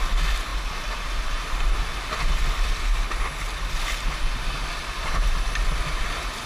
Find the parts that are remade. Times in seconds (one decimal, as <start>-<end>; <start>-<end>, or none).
none